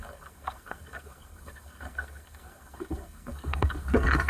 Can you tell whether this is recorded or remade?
remade